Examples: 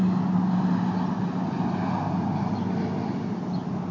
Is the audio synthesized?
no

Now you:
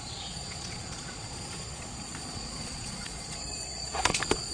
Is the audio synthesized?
yes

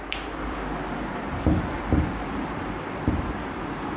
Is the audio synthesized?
yes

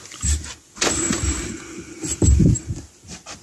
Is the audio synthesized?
yes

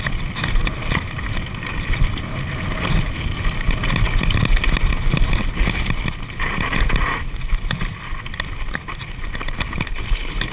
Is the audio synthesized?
no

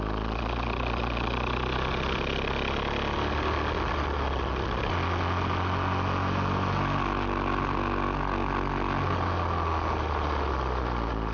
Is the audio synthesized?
no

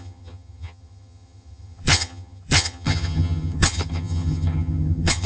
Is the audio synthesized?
yes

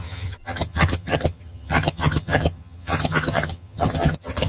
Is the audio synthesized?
yes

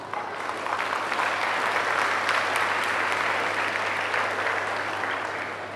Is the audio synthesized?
no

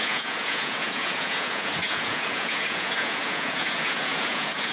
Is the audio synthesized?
yes